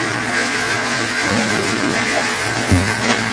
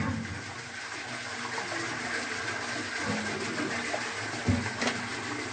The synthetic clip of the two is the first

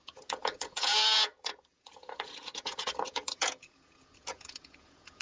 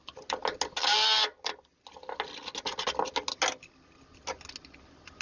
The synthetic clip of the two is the first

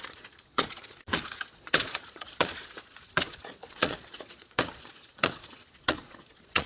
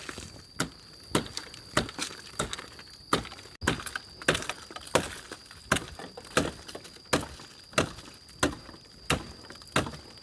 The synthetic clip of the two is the first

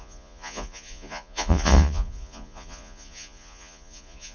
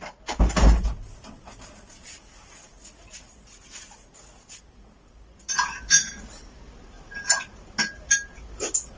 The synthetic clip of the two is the first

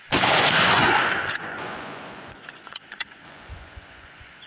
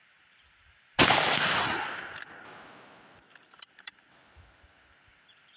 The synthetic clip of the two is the first